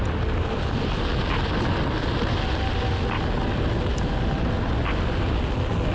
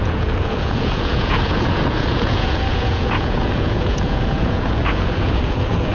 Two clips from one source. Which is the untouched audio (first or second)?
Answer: first